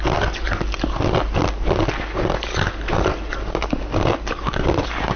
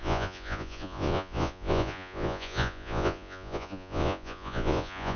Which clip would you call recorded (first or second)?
first